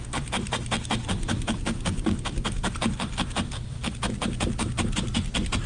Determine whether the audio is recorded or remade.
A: recorded